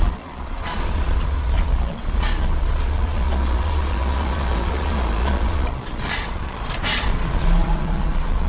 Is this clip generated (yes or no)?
yes